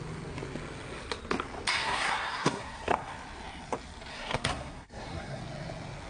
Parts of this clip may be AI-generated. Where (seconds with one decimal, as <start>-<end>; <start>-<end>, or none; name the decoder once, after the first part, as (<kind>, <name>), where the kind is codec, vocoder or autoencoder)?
1.8-3.1 (codec, SNAC); 4.1-5.4